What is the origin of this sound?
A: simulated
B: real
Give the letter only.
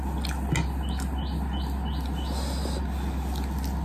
B